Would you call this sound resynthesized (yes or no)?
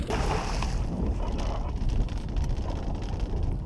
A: no